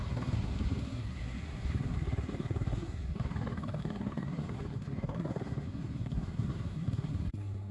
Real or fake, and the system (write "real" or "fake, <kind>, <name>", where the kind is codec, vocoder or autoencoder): fake, codec, SNAC